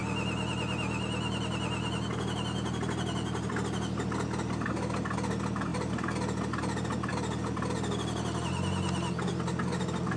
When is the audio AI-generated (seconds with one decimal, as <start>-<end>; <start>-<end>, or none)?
none